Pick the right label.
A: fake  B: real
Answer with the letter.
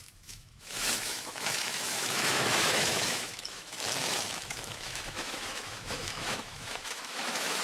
A